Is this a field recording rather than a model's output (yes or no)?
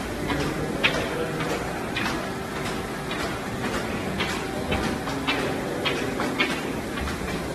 yes